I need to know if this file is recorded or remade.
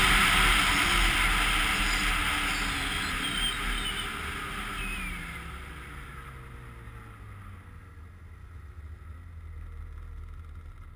recorded